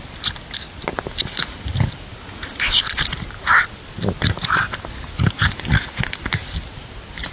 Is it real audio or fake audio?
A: real